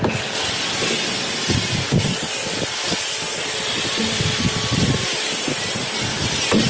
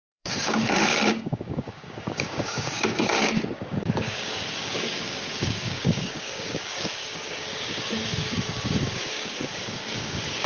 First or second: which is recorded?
first